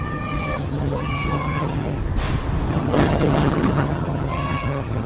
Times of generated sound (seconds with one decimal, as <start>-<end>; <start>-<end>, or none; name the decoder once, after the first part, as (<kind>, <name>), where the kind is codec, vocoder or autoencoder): 0.0-2.0 (vocoder, HiFi-GAN); 2.7-5.1